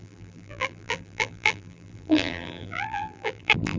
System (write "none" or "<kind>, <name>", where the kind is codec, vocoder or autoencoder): vocoder, BigVGAN v2